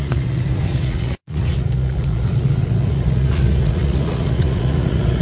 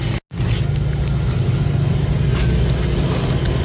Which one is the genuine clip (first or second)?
second